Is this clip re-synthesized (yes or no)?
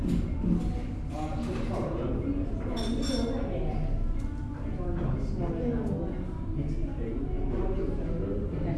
no